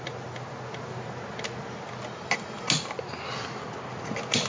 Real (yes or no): yes